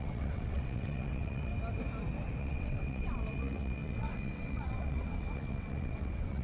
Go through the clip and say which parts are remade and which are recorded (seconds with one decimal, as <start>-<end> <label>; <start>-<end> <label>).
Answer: 0.0-1.5 remade; 1.5-2.4 recorded; 2.4-6.4 remade